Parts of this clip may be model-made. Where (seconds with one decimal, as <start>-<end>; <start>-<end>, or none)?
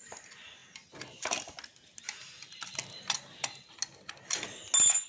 none